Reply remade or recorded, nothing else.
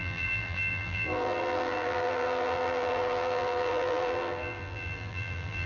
remade